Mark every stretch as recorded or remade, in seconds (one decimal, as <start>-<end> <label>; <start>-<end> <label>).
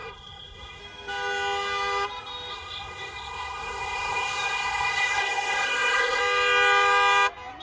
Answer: 0.0-0.8 remade; 0.8-2.5 recorded; 2.5-6.2 remade; 6.2-7.6 recorded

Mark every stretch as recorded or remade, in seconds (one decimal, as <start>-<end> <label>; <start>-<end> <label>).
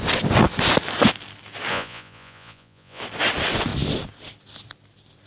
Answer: 0.0-1.7 recorded; 1.7-3.0 remade; 3.0-5.3 recorded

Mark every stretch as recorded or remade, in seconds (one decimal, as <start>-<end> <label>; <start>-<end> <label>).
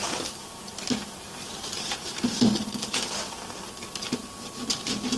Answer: 0.0-5.2 recorded